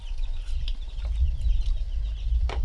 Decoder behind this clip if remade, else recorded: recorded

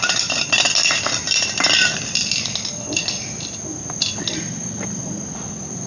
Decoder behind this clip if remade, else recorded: remade, vocoder, BigVGAN v2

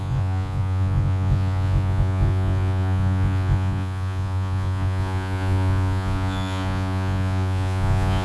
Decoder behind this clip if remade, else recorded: remade, vocoder, Vocos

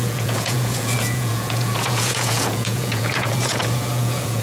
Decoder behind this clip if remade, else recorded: remade, vocoder, Vocos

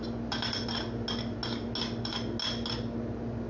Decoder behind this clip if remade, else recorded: recorded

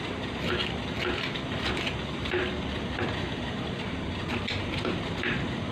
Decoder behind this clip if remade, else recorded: recorded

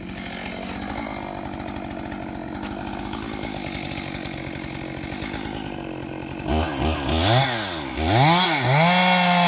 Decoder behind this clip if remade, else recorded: recorded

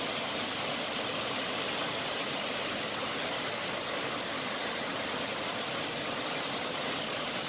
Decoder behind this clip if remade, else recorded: recorded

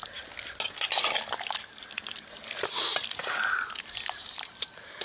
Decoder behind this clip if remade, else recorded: recorded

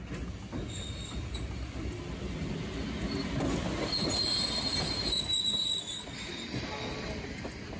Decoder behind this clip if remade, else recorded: recorded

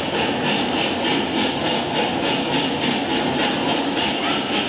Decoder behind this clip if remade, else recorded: recorded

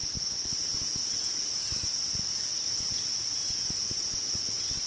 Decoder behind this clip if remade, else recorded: recorded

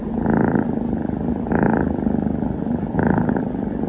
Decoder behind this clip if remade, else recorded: recorded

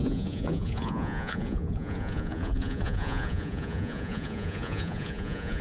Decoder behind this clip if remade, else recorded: remade, vocoder, Vocos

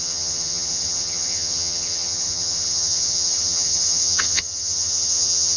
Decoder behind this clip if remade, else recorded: remade, vocoder, HiFi-GAN